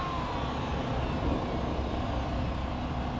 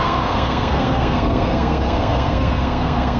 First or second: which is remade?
second